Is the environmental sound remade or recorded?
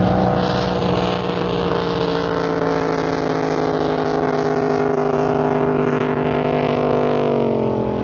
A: recorded